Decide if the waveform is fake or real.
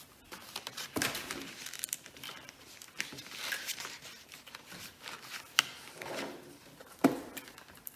fake